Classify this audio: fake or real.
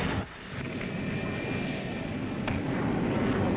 real